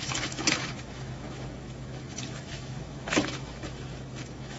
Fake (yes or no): yes